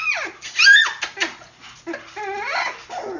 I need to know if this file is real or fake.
real